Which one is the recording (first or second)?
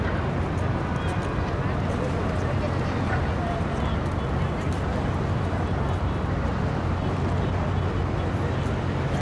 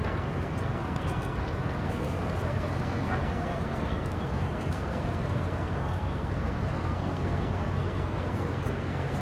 first